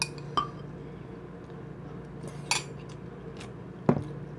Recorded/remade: recorded